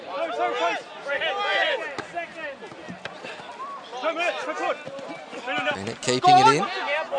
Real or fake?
real